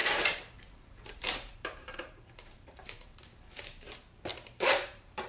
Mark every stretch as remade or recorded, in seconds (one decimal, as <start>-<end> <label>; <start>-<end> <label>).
0.0-3.2 remade; 3.2-4.3 recorded; 4.3-5.3 remade